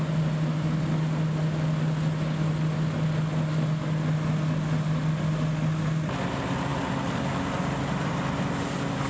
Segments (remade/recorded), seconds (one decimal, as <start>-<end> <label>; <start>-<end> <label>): 0.0-9.1 recorded